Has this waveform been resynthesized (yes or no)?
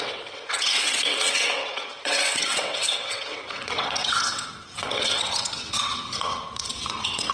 yes